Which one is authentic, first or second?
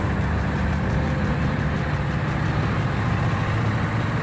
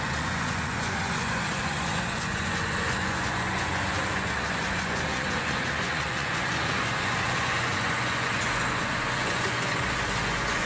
first